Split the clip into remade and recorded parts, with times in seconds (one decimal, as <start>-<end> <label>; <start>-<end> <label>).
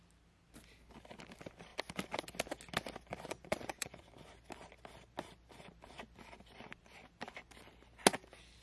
0.0-3.1 recorded; 3.1-4.0 remade; 4.0-8.6 recorded